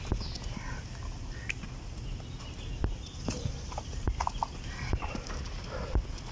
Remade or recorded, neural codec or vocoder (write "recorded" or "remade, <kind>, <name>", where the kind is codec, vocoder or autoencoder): recorded